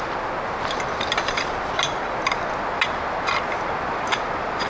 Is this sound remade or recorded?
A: recorded